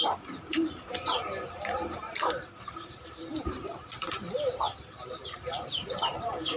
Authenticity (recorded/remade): remade